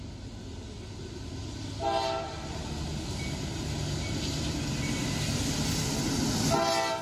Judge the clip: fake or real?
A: real